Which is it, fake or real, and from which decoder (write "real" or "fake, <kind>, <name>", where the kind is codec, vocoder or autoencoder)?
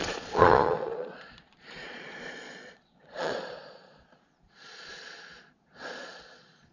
fake, vocoder, Vocos